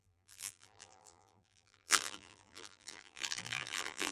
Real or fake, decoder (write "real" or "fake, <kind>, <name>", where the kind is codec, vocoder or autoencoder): fake, vocoder, BigVGAN v2